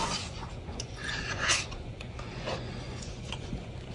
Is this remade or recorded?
remade